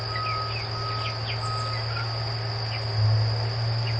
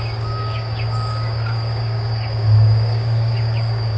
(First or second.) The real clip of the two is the first